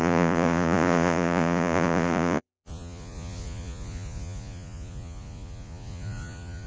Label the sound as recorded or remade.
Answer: remade